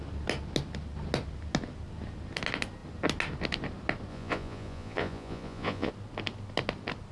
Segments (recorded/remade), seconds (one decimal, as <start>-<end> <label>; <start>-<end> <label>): 0.0-4.1 recorded; 4.1-5.9 remade; 5.9-7.1 recorded